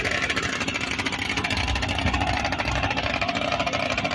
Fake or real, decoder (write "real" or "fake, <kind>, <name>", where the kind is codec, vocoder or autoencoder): real